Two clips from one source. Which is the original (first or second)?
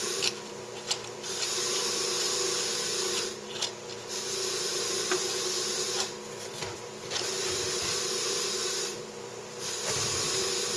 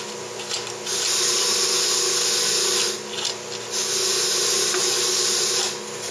second